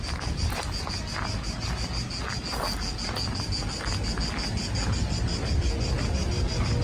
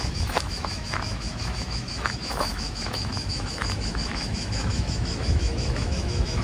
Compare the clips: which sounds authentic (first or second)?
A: first